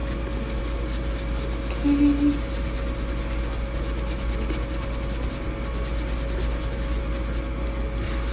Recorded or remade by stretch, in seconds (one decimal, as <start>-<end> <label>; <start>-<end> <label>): 0.0-8.3 recorded

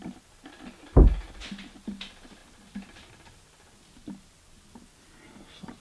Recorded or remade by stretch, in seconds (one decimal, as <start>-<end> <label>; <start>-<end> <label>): 0.0-5.8 recorded

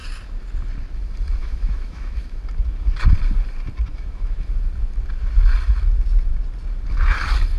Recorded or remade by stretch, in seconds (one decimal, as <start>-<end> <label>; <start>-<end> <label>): 0.0-1.4 recorded; 1.4-2.4 remade; 2.4-3.9 recorded; 3.9-4.5 remade; 4.5-7.6 recorded

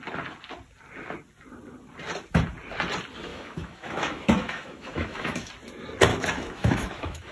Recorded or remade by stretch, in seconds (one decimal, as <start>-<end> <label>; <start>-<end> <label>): 0.0-3.3 recorded; 3.3-5.5 remade; 5.5-6.1 recorded; 6.1-7.3 remade